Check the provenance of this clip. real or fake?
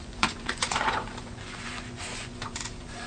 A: fake